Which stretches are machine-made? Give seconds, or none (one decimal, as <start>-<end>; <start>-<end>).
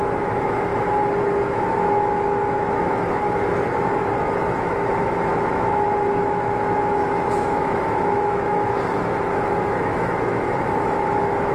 0.0-0.7; 1.2-3.4; 4.0-11.5